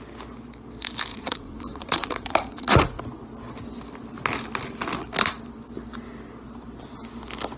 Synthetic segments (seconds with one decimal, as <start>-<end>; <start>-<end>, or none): 1.1-3.0